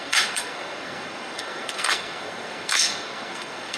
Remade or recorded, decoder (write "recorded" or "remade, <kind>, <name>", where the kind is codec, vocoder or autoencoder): remade, codec, SNAC